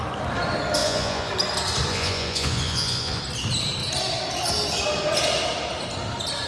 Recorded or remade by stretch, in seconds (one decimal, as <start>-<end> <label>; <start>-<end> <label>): 0.0-0.8 recorded; 0.8-1.3 remade; 1.3-1.9 recorded; 1.9-3.2 remade; 3.2-6.5 recorded